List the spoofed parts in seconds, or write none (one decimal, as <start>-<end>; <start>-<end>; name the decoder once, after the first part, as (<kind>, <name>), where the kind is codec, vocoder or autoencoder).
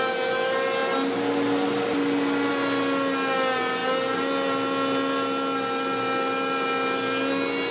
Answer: none